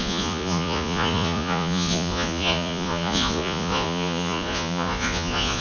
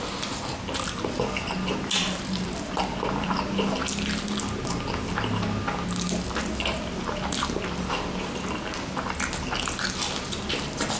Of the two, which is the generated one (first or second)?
first